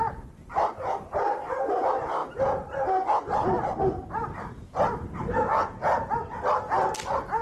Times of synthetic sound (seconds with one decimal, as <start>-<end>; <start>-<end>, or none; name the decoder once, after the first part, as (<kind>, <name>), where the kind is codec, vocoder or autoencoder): none